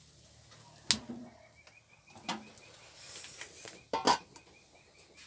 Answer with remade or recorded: recorded